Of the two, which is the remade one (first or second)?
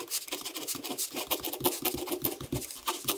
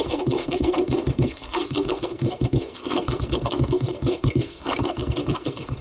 second